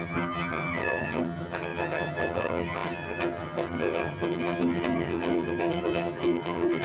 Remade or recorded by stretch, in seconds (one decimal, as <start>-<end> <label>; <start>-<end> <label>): 0.0-6.8 remade